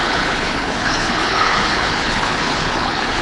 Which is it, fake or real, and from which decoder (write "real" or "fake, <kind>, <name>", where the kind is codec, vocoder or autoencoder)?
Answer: fake, codec, HILCodec